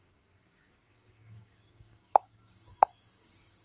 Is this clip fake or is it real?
fake